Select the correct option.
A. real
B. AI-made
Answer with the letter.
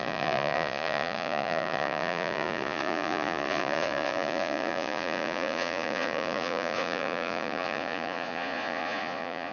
B